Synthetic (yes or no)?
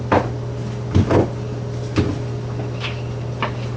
no